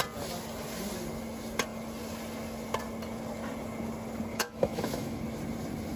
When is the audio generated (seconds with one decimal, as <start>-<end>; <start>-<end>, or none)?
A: 4.3-5.2